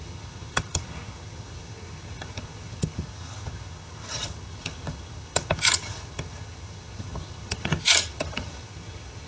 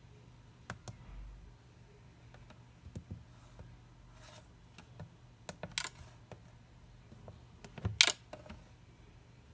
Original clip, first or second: second